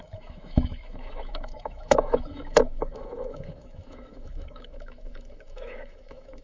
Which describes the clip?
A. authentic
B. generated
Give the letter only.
B